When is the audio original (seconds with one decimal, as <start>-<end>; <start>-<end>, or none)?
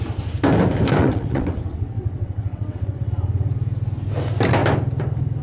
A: 0.0-1.0; 3.1-5.4